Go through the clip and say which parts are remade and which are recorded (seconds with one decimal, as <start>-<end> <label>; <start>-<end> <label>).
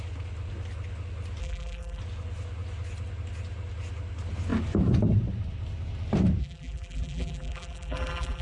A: 0.0-1.4 recorded; 1.4-2.0 remade; 2.0-6.4 recorded; 6.4-8.4 remade